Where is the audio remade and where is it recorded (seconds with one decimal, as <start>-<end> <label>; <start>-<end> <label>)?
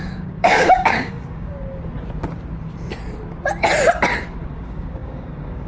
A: 0.0-1.5 remade; 1.5-4.5 recorded; 4.5-5.7 remade